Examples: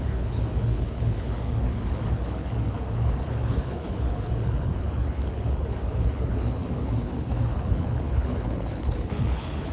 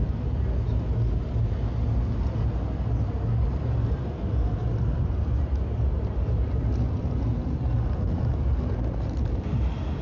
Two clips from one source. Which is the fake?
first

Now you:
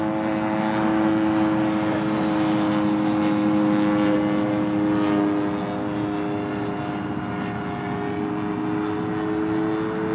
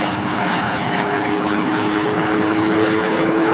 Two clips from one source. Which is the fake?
second